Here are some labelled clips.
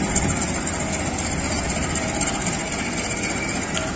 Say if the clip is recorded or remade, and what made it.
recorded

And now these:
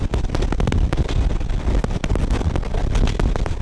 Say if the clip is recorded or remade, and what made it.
recorded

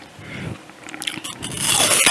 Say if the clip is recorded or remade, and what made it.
recorded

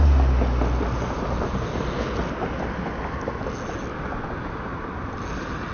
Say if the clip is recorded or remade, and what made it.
recorded